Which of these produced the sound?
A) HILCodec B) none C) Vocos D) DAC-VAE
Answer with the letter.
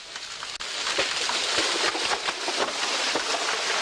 B